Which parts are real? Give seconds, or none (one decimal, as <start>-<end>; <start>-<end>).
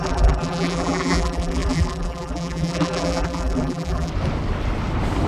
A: 4.1-5.3